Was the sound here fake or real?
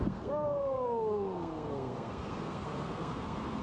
fake